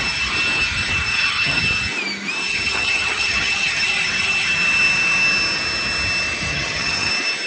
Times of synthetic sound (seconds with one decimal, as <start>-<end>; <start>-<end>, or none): 1.1-1.6; 2.5-3.8; 6.5-7.1